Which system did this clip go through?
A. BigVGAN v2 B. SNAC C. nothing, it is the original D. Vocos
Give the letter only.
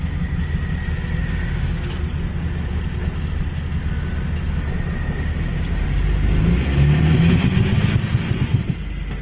C